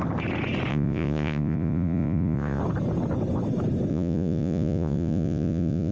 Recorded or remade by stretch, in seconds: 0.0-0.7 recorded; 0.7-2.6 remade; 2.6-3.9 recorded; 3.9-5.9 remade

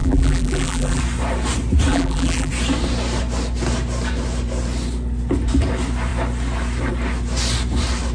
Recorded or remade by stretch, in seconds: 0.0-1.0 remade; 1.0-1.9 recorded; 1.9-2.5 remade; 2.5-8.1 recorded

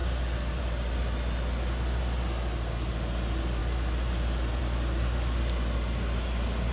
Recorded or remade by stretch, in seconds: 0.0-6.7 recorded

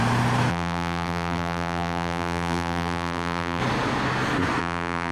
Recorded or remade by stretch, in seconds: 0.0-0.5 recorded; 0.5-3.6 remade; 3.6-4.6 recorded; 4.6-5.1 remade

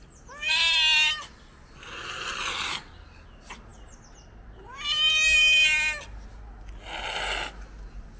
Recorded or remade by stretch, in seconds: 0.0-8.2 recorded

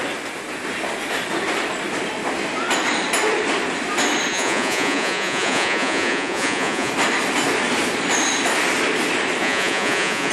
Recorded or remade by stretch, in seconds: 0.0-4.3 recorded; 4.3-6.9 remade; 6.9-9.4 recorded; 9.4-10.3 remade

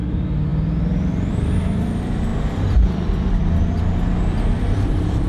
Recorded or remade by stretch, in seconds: 0.0-5.3 remade

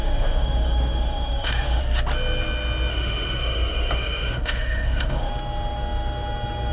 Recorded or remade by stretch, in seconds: 0.0-1.8 remade; 1.8-2.9 recorded; 2.9-5.3 remade; 5.3-6.7 recorded